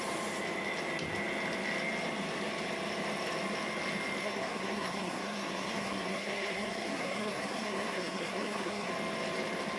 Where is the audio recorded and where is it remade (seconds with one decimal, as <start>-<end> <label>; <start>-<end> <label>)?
0.0-4.2 recorded; 4.2-8.9 remade; 8.9-9.8 recorded